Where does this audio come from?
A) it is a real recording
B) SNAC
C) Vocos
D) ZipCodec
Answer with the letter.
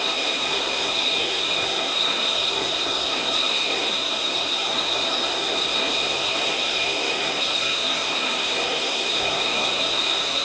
B